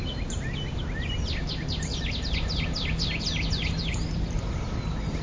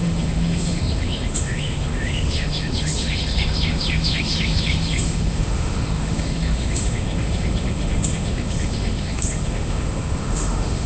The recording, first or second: first